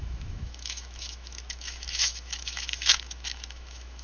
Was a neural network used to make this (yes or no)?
yes